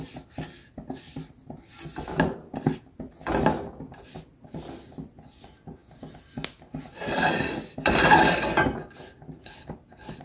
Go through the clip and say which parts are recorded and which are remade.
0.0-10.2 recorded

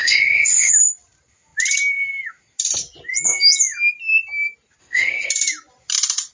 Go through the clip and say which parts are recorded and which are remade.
0.0-0.7 remade; 0.7-4.8 recorded; 4.8-5.3 remade; 5.3-6.3 recorded

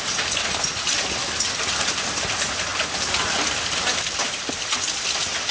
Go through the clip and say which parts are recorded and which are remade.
0.0-5.5 recorded

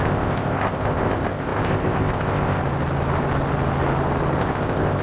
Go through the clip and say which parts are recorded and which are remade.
0.0-2.6 remade; 2.6-4.4 recorded; 4.4-5.0 remade

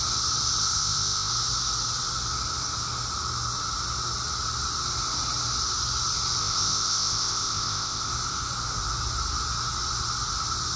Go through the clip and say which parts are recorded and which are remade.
0.0-0.6 recorded; 0.6-1.3 remade; 1.3-6.4 recorded; 6.4-8.1 remade; 8.1-10.8 recorded

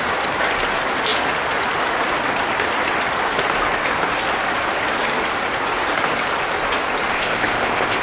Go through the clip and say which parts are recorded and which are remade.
0.0-7.1 recorded; 7.1-8.0 remade

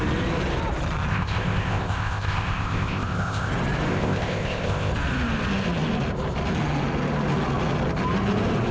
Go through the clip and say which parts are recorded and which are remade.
0.0-1.1 recorded; 1.1-3.5 remade; 3.5-3.9 recorded; 3.9-4.9 remade; 4.9-8.7 recorded